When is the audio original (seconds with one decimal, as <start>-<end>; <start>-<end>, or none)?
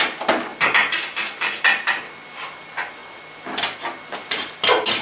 0.0-5.0